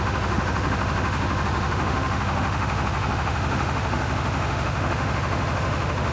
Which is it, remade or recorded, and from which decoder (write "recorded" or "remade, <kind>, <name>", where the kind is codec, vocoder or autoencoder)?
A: remade, autoencoder, DAC-VAE